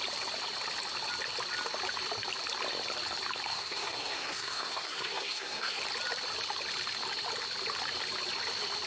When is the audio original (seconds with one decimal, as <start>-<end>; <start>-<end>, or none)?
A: 0.0-3.5; 5.8-8.9